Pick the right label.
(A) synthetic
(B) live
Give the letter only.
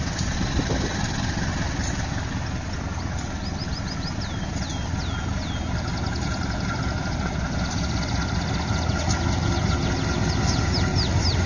B